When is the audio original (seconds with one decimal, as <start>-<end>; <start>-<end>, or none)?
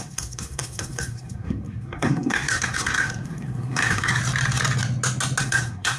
4.2-5.4